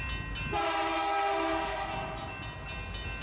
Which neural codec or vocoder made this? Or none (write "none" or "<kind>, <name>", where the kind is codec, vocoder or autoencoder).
none